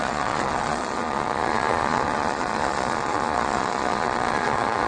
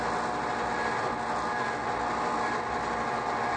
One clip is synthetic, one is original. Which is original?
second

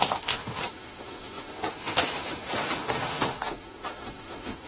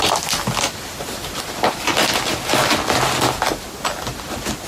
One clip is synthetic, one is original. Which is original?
second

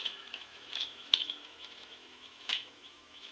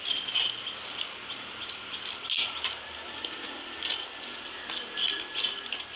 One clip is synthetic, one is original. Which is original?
second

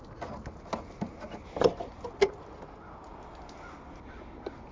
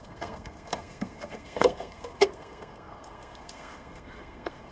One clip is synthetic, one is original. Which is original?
first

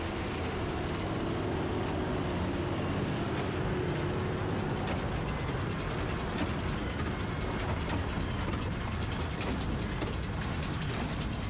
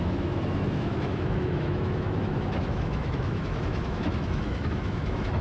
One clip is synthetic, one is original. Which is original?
first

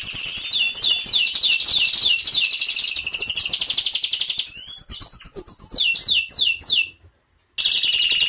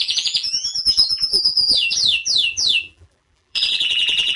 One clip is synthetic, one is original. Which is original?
first